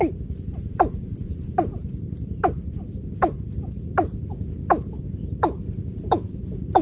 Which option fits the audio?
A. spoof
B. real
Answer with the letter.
B